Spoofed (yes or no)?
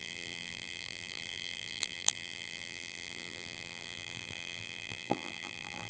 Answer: yes